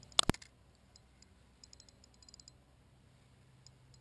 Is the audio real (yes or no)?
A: yes